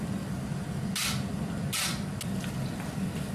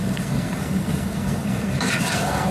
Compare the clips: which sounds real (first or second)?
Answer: first